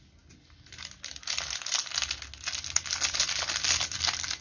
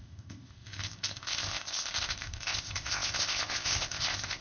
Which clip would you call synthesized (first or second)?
second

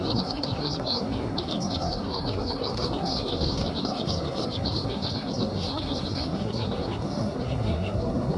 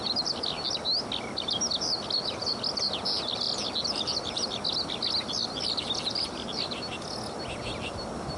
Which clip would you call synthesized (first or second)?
first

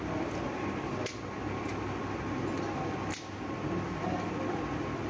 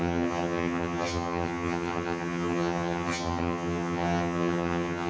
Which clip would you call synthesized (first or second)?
second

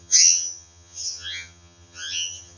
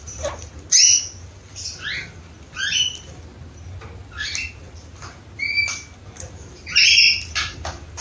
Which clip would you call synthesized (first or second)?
first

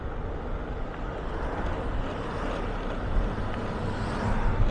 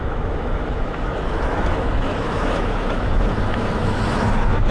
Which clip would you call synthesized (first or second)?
second